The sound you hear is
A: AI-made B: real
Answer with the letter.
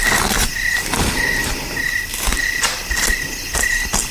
B